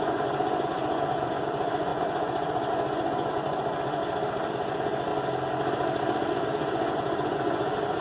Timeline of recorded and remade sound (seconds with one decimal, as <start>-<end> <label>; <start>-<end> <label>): 0.0-4.0 remade; 4.0-4.5 recorded; 4.5-5.1 remade; 5.1-6.3 recorded; 6.3-8.0 remade